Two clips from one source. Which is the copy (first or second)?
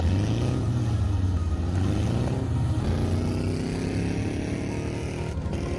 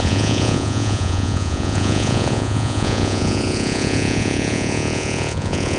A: second